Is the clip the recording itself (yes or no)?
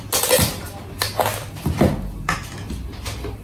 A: yes